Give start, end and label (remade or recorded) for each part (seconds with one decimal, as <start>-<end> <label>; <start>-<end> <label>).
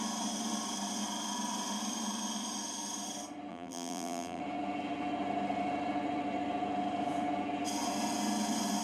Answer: 0.0-3.5 recorded; 3.5-4.4 remade; 4.4-8.8 recorded